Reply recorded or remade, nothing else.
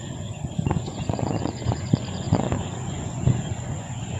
remade